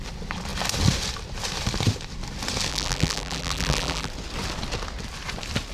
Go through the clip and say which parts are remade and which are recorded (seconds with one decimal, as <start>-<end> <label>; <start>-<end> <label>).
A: 0.0-2.7 recorded; 2.7-4.1 remade; 4.1-5.7 recorded